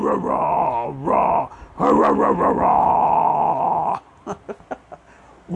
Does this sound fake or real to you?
real